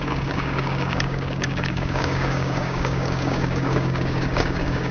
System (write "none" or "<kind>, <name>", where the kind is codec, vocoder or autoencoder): codec, DAC